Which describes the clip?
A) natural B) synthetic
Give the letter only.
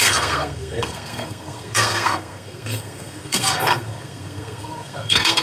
B